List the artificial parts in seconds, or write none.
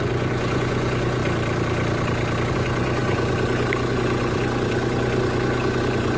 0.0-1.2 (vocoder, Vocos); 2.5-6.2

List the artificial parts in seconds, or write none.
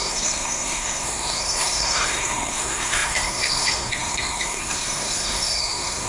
0.0-6.1 (codec, SNAC)